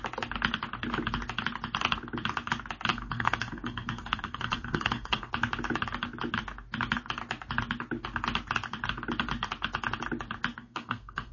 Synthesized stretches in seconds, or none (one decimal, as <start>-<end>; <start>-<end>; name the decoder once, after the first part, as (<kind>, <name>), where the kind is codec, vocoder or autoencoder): 2.9-5.3 (codec, SNAC); 10.6-11.3